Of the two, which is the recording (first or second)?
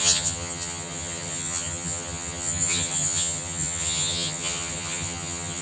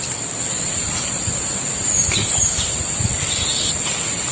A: second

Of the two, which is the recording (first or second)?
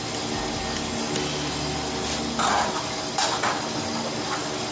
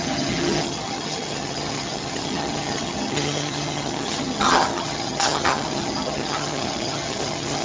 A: first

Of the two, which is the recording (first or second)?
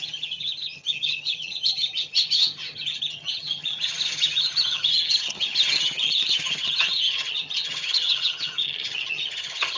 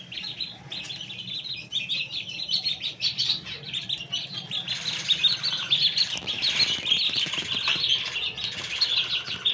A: second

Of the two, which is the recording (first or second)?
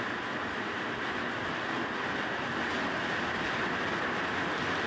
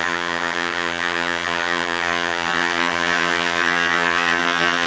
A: first